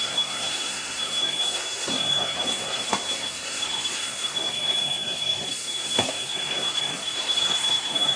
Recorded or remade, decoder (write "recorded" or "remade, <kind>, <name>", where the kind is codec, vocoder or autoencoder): remade, codec, SNAC